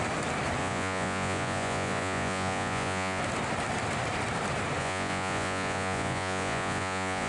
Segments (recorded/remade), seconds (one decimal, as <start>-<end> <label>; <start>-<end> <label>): 0.0-0.6 recorded; 0.6-3.2 remade; 3.2-4.8 recorded; 4.8-7.3 remade